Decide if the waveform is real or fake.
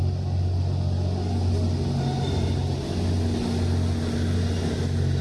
real